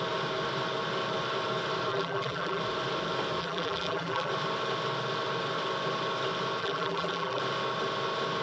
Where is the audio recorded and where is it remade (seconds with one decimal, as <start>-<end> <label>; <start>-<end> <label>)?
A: 0.0-1.9 recorded; 1.9-2.6 remade; 2.6-3.4 recorded; 3.4-4.3 remade; 4.3-6.6 recorded; 6.6-7.4 remade; 7.4-8.4 recorded